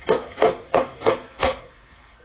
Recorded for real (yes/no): no